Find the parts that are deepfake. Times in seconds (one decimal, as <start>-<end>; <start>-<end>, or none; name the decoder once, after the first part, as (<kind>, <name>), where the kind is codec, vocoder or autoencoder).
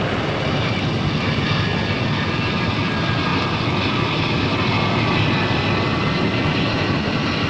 none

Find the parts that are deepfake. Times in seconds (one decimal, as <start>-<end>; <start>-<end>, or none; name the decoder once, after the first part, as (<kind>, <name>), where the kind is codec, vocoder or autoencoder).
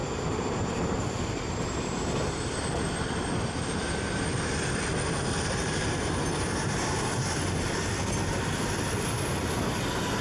0.0-4.2 (vocoder, BigVGAN v2); 5.6-7.7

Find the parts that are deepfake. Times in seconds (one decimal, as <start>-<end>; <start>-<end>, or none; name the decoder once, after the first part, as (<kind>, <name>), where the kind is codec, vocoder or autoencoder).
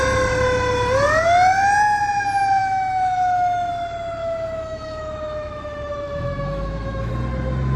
2.6-3.7 (autoencoder, DAC-VAE); 4.2-7.1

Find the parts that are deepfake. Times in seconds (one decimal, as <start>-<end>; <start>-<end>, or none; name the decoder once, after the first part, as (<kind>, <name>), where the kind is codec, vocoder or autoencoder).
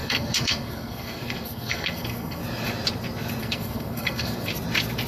0.0-2.4 (codec, SNAC); 3.4-4.5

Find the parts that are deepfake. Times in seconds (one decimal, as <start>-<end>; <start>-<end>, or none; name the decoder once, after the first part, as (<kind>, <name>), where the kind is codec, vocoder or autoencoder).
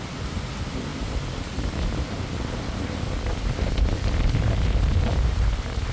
none